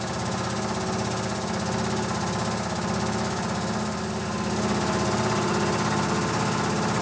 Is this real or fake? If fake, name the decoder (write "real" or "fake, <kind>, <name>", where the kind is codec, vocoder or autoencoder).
real